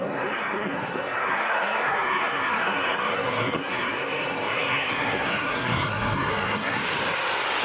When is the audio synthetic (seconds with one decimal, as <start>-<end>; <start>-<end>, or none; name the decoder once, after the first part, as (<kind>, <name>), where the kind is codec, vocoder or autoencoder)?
0.0-6.8 (codec, SNAC)